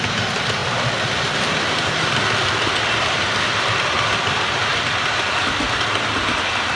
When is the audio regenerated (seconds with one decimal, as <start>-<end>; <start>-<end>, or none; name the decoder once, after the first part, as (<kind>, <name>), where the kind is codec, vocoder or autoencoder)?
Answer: 0.0-6.8 (vocoder, BigVGAN v2)